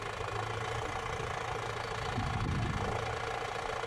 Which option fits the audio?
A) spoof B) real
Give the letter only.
B